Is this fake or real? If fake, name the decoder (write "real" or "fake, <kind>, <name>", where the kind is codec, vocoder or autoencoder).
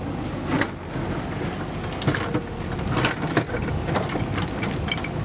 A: real